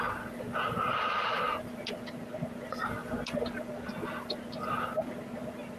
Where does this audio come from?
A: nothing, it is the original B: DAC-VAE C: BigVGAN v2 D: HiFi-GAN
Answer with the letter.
A